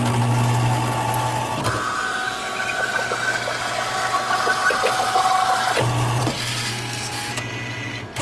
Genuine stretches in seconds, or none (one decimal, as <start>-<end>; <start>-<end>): 0.0-6.7; 7.3-8.2